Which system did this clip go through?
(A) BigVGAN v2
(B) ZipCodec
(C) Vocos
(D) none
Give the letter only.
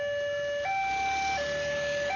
D